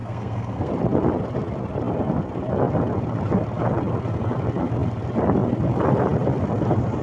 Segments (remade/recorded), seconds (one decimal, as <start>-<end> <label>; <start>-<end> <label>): 0.0-0.7 remade; 0.7-7.0 recorded